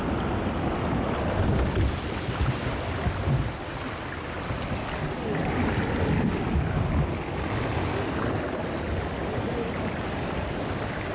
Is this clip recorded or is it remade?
recorded